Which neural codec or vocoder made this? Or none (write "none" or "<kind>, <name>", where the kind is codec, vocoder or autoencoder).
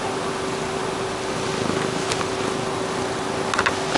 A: none